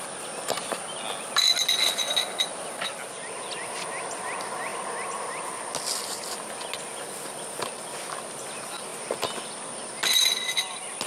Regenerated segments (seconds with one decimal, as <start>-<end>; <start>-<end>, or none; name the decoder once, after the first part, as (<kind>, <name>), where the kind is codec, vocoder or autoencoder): none